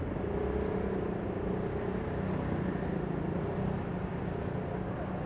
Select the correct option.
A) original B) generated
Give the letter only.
A